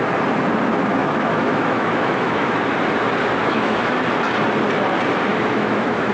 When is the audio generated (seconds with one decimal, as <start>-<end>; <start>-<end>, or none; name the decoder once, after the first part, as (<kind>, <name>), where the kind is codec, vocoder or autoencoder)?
1.0-2.6 (autoencoder, DAC-VAE); 3.4-3.9; 5.3-6.1